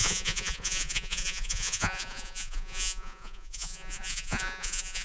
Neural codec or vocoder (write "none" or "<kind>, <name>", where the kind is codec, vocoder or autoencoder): vocoder, Vocos